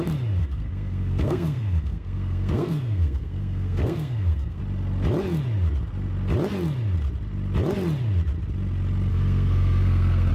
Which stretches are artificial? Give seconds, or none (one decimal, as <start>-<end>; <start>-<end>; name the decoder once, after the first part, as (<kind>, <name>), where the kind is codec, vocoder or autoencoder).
0.4-4.6 (codec, SNAC); 9.1-10.3